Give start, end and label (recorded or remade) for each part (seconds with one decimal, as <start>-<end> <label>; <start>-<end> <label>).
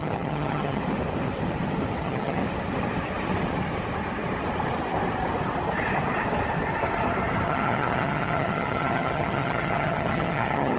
0.0-0.8 remade; 0.8-2.0 recorded; 2.0-2.4 remade; 2.4-7.5 recorded; 7.5-10.8 remade